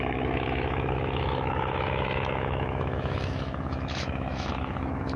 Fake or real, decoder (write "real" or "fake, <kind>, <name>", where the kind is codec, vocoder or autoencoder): fake, autoencoder, DAC-VAE